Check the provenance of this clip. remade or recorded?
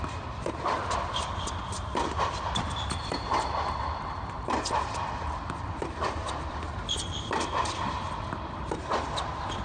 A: remade